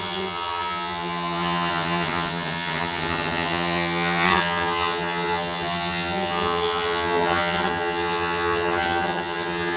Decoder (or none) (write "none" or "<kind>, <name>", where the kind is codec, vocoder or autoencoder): vocoder, HiFi-GAN